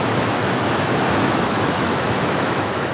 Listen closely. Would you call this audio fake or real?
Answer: fake